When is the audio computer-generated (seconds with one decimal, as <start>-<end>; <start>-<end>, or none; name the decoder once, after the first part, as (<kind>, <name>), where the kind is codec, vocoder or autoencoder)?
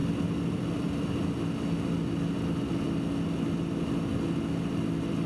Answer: none